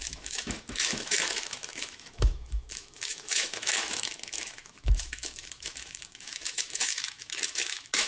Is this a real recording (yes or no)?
no